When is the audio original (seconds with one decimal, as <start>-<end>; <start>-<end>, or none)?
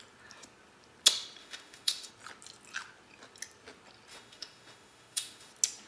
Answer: 0.0-1.4; 2.1-4.1; 5.5-5.9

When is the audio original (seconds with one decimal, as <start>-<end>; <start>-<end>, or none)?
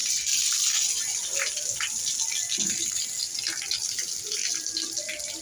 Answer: 0.0-5.4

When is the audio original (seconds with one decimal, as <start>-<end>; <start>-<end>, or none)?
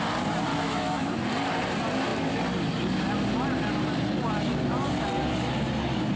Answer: 0.0-0.5; 1.1-6.2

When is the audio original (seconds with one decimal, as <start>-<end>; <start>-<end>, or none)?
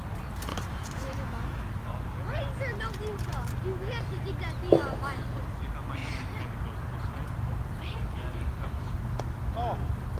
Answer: 0.0-0.5; 1.9-10.2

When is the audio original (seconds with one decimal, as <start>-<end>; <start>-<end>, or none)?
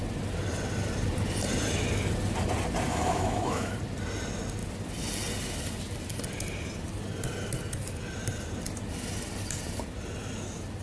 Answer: 0.0-2.9; 3.7-10.8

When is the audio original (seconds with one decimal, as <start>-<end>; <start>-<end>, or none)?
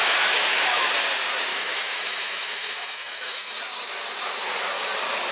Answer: 0.9-1.5; 3.6-5.3